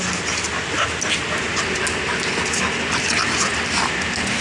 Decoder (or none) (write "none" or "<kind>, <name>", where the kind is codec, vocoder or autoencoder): none